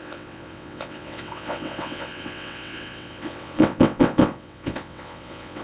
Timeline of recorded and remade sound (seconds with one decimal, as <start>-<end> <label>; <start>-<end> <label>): 0.0-5.6 remade